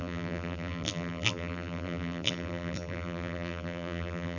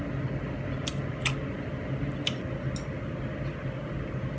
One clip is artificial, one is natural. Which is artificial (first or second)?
first